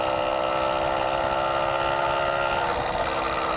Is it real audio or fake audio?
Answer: real